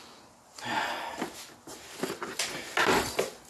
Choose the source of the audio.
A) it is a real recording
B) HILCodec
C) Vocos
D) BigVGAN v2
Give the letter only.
A